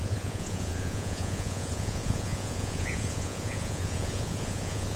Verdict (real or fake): fake